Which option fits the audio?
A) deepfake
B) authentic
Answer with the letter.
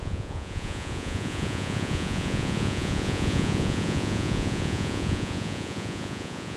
A